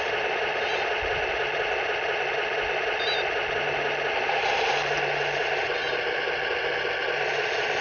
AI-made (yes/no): no